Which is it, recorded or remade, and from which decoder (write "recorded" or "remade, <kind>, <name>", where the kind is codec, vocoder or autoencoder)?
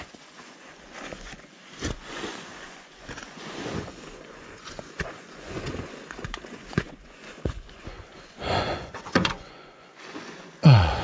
remade, vocoder, Vocos